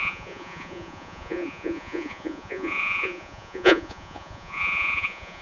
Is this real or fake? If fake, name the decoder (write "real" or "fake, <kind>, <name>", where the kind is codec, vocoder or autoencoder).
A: fake, vocoder, Vocos